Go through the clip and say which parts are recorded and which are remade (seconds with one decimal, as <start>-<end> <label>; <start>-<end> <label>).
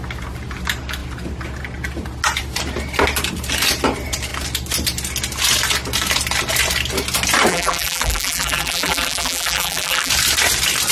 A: 0.0-7.5 recorded; 7.5-10.1 remade; 10.1-10.9 recorded